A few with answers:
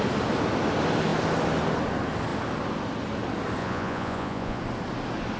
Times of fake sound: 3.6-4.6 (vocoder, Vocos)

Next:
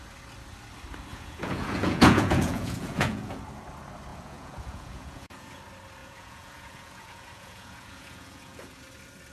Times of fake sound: 1.1-3.4 (vocoder, Vocos); 4.1-5.6; 6.0-8.8

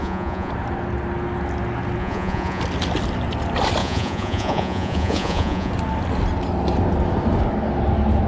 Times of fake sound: 0.0-0.5 (vocoder, Vocos); 2.0-2.6; 3.8-5.7